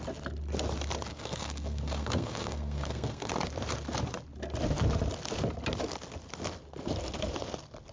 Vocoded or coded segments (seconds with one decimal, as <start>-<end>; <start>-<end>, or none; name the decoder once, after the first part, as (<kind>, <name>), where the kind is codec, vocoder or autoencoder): 1.1-3.3 (codec, SNAC)